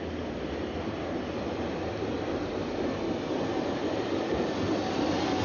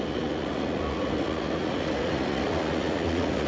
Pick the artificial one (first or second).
second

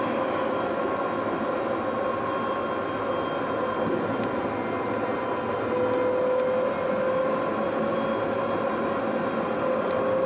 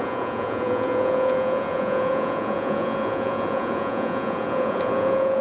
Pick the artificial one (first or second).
second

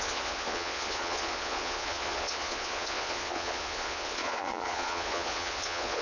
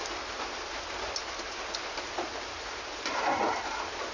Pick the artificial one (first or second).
first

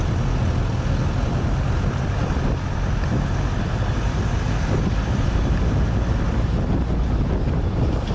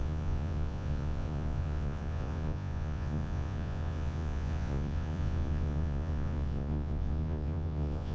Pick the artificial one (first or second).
second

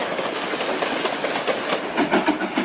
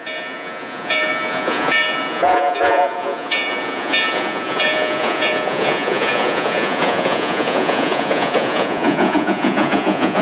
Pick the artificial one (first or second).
second